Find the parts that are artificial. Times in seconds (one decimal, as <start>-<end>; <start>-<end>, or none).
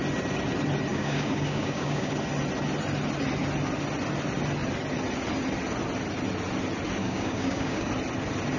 0.9-2.1; 7.0-7.9